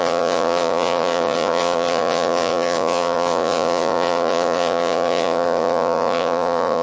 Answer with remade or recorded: remade